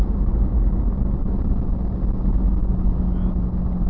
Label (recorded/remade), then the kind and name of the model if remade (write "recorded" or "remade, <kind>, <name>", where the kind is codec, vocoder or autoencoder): recorded